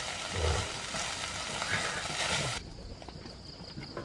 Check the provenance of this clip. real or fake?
real